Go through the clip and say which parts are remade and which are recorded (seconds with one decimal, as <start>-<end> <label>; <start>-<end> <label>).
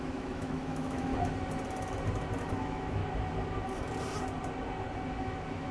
0.0-1.1 remade; 1.1-2.4 recorded; 2.4-3.0 remade; 3.0-5.2 recorded; 5.2-5.7 remade